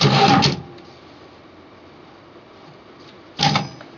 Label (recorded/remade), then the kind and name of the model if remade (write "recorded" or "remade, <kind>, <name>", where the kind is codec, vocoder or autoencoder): recorded